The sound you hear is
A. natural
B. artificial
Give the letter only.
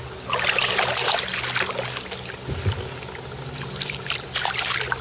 A